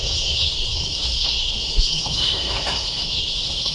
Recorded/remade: remade